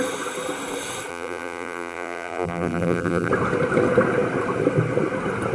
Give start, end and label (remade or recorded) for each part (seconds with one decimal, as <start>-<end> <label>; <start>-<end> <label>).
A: 0.0-1.1 recorded; 1.1-3.3 remade; 3.3-5.5 recorded